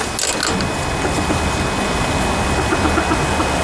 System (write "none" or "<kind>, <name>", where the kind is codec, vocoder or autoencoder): none